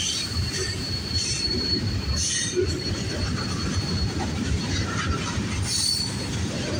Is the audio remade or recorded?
remade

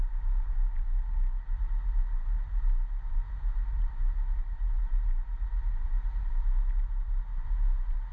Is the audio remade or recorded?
remade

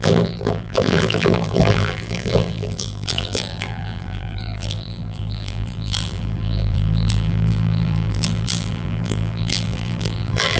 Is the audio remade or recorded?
remade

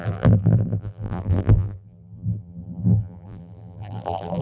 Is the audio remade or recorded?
remade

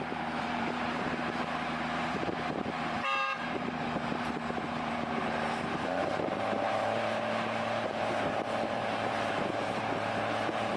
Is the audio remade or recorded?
remade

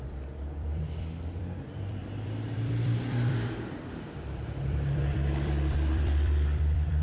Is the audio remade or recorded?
remade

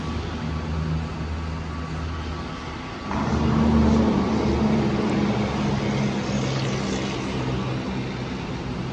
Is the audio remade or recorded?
recorded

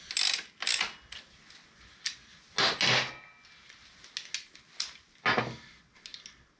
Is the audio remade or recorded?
recorded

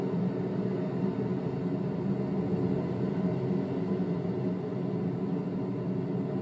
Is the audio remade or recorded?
recorded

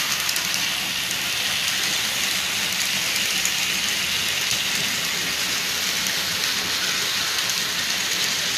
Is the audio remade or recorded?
recorded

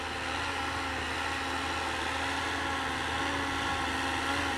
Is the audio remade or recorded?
recorded